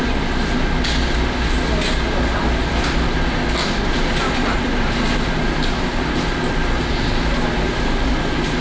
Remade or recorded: recorded